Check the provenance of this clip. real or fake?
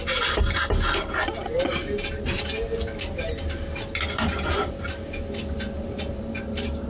real